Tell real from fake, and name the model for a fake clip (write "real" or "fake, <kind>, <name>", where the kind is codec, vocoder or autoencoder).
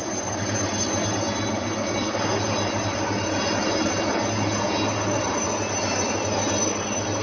real